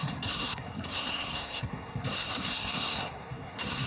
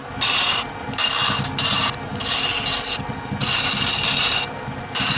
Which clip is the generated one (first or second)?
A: first